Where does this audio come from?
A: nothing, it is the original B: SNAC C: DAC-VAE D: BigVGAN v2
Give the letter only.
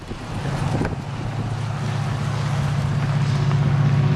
A